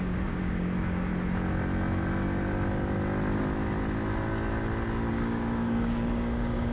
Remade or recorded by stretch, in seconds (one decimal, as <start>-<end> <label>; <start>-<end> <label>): 0.0-1.1 remade; 1.1-5.1 recorded; 5.1-6.7 remade